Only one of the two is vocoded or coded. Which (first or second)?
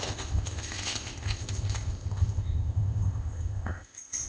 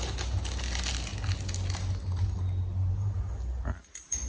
first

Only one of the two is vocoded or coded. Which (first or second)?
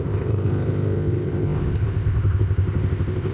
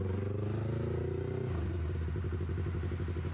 first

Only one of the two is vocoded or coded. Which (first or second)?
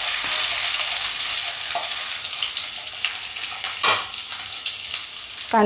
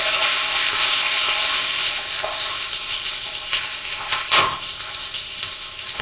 second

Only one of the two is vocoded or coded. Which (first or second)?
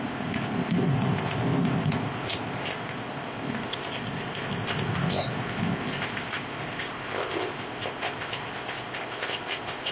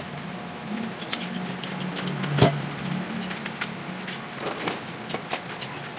first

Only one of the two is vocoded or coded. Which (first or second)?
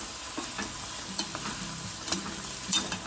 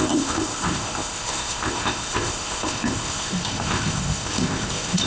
second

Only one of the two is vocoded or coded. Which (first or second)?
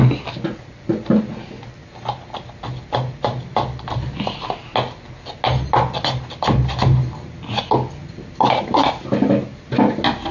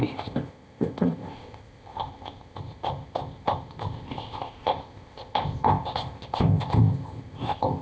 second